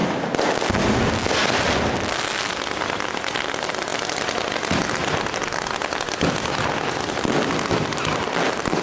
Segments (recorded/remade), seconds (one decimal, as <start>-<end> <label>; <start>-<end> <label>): 0.0-8.8 recorded